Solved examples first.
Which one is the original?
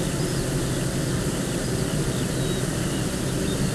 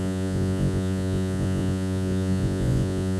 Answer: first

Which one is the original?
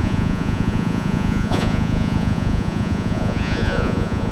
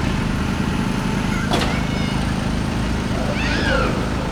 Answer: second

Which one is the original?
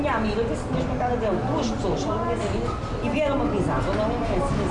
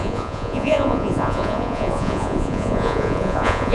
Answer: first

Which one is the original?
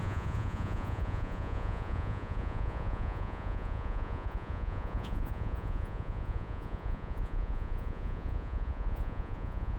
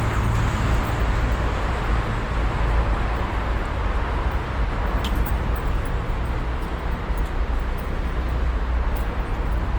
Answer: second